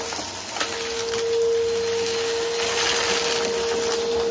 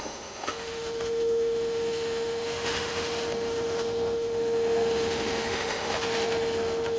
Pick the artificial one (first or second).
second